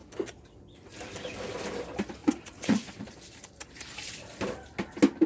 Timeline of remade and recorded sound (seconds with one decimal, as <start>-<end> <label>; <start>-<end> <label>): 0.0-2.2 recorded; 2.2-2.9 remade; 2.9-5.3 recorded